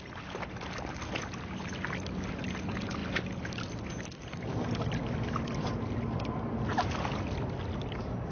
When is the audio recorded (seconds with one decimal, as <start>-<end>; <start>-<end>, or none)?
0.0-8.3